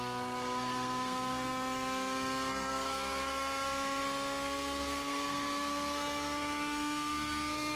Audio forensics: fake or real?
fake